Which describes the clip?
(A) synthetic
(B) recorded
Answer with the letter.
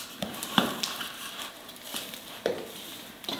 A